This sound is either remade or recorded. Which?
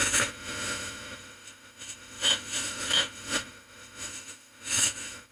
remade